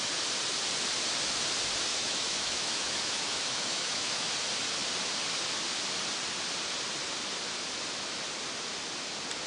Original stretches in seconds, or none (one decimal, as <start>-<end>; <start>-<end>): 0.0-1.9; 4.3-9.5